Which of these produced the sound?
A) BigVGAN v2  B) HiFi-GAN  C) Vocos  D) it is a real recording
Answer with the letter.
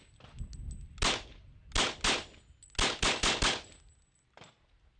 D